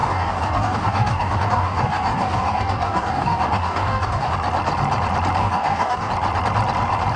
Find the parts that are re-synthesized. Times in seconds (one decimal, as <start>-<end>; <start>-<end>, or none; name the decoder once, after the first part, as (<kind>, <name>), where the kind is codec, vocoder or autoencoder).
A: 0.0-4.3 (codec, DAC); 5.4-6.1